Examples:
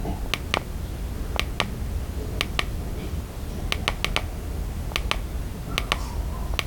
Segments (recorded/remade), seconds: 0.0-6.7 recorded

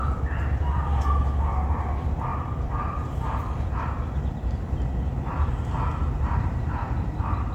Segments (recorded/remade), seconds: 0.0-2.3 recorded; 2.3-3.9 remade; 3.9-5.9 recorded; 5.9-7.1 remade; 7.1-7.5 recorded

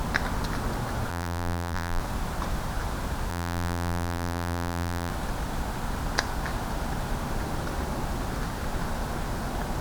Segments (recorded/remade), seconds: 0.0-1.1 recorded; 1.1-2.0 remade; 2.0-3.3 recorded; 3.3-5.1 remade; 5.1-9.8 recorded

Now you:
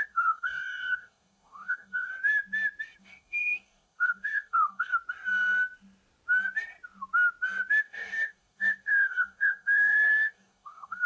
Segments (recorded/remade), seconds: 0.0-2.1 remade; 2.1-3.0 recorded; 3.0-4.9 remade; 4.9-7.8 recorded; 7.8-11.1 remade

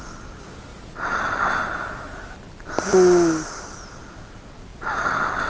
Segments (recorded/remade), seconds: 0.0-5.5 recorded

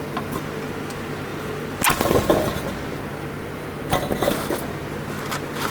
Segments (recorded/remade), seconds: 0.0-5.7 recorded

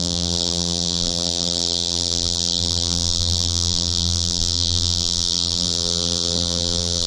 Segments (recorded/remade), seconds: 0.0-7.1 remade